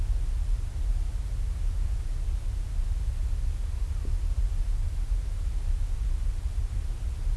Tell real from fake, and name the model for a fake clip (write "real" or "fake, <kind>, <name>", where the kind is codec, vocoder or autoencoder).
real